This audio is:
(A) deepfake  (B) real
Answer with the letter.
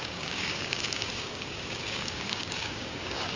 A